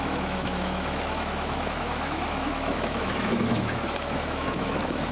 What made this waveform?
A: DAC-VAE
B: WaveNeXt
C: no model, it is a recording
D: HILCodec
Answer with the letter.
A